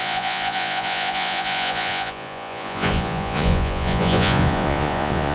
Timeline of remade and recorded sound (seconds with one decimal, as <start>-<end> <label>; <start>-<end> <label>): 0.0-5.3 remade